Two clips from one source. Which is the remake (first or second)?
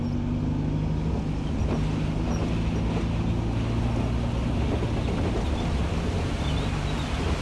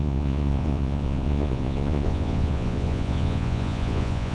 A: second